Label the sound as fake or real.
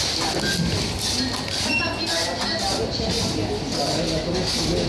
real